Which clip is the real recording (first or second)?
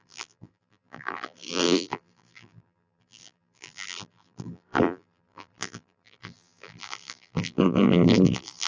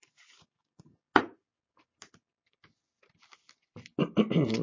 second